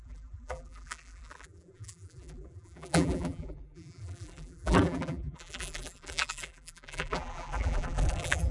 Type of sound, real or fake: fake